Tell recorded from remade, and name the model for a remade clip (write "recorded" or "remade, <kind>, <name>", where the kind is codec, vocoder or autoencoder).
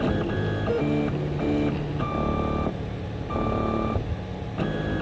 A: recorded